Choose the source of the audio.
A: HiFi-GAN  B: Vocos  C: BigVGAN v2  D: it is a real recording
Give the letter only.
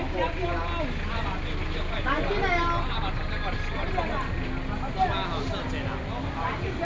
D